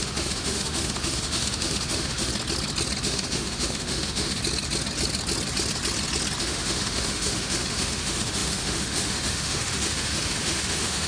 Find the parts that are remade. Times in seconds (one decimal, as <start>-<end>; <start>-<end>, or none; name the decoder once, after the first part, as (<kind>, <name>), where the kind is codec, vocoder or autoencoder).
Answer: 0.0-2.3 (autoencoder, DAC-VAE); 3.0-4.4; 6.4-11.1